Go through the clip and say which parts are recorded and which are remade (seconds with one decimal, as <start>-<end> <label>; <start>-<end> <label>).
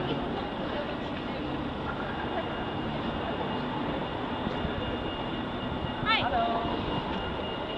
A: 0.0-7.8 recorded